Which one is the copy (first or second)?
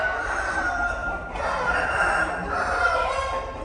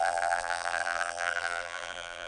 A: second